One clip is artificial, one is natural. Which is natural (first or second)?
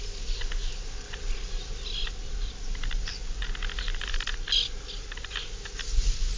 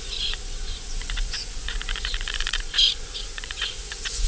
first